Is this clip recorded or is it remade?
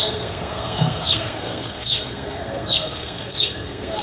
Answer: remade